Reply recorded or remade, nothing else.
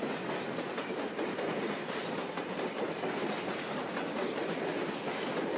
recorded